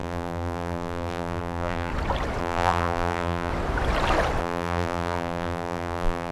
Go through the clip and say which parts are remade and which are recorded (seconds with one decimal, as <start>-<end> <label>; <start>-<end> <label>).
0.0-1.9 remade; 1.9-2.4 recorded; 2.4-3.5 remade; 3.5-4.4 recorded; 4.4-6.3 remade